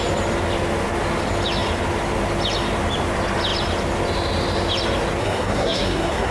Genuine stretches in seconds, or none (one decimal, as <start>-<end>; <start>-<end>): 0.0-5.2